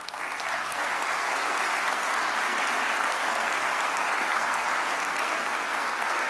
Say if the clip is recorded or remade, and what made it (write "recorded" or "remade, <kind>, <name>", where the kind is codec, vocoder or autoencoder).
remade, codec, SNAC